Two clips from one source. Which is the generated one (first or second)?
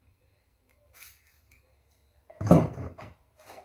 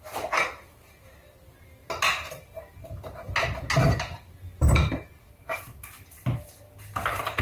first